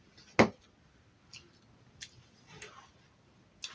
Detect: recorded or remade recorded